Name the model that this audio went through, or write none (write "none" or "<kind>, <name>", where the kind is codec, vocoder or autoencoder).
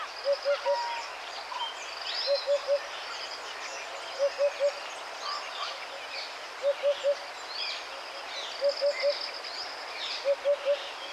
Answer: none